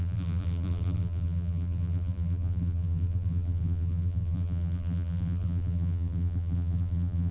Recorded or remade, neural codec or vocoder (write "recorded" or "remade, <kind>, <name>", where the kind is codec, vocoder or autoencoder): remade, vocoder, BigVGAN v2